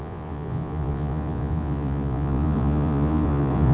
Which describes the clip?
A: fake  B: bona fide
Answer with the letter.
A